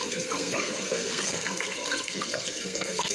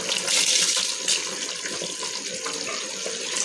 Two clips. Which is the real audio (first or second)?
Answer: second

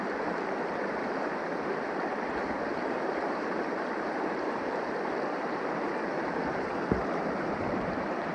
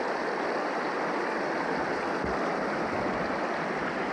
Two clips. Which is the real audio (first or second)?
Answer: second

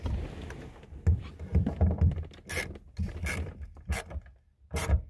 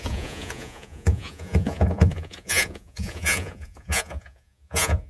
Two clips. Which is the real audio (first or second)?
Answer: first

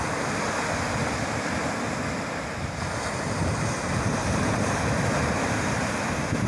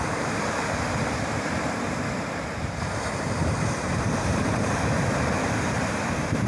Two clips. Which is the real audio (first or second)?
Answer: first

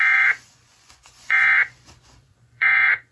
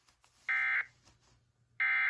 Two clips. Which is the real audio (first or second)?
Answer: second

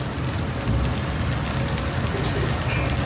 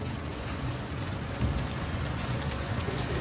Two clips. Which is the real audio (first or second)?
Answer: first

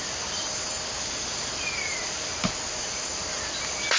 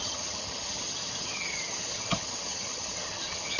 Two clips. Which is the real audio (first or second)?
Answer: first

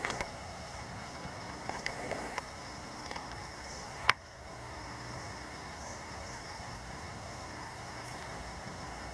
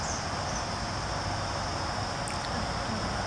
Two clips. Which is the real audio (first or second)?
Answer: second